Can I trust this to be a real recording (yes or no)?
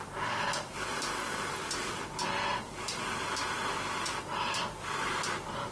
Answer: yes